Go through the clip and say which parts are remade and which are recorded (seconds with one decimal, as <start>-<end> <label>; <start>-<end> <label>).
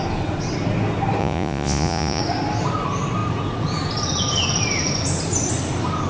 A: 0.0-1.2 recorded; 1.2-2.2 remade; 2.2-6.1 recorded